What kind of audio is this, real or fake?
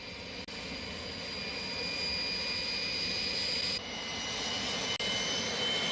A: real